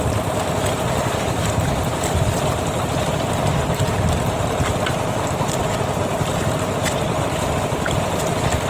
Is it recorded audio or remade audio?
recorded